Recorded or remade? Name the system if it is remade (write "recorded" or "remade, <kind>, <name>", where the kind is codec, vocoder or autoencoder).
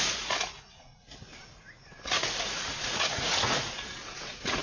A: remade, vocoder, Vocos